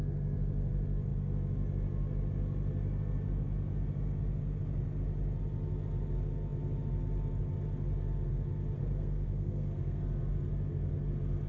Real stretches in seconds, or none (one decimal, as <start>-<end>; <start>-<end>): 0.0-8.8; 10.0-11.5